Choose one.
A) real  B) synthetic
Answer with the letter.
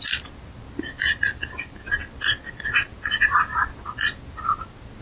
A